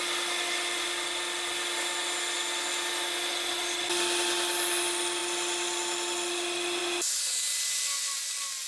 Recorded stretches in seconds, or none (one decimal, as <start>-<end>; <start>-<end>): 0.0-8.7

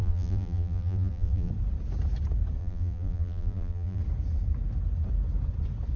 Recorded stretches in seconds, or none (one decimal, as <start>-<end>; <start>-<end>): 1.5-2.6; 4.0-6.0